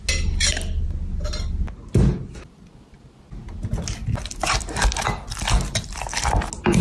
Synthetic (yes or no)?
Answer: no